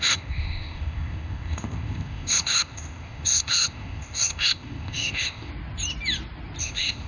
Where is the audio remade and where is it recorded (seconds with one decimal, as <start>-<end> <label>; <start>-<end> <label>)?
0.0-5.5 remade; 5.5-6.6 recorded; 6.6-7.1 remade